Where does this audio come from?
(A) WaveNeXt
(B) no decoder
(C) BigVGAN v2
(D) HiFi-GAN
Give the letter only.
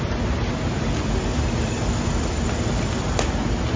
B